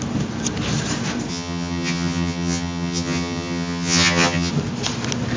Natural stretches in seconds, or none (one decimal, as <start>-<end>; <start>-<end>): 0.0-1.3; 4.5-5.4